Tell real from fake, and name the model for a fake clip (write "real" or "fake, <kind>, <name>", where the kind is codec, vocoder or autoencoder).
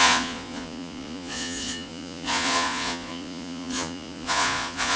fake, vocoder, Vocos